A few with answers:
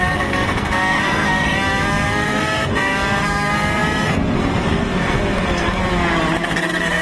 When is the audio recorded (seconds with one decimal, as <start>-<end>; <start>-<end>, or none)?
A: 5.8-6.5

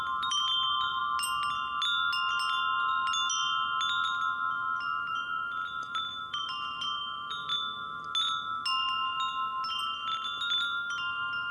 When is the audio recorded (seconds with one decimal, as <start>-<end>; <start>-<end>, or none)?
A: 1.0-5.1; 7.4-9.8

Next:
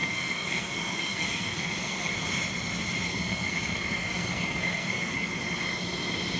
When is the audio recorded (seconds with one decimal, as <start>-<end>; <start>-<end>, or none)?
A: 2.1-3.1; 5.3-6.4